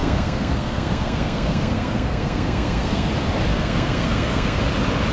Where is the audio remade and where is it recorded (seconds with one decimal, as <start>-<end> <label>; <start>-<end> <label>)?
0.0-3.1 remade; 3.1-3.5 recorded; 3.5-4.6 remade; 4.6-5.1 recorded